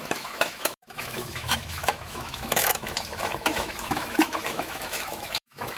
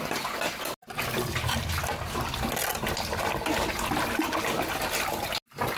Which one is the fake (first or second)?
first